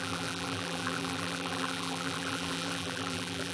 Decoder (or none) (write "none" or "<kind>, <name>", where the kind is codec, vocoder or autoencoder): vocoder, BigVGAN v2